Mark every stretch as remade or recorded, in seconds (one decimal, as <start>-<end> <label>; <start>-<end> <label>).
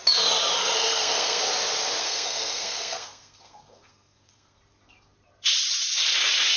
0.0-0.6 recorded; 0.6-1.4 remade; 1.4-2.0 recorded; 2.0-4.6 remade; 4.6-6.6 recorded